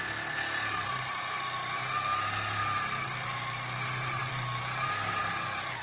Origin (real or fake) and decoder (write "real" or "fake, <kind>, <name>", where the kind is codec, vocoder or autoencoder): real